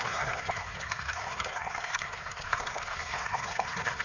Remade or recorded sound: remade